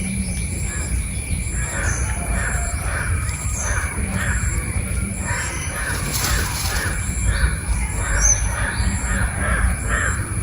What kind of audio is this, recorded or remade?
remade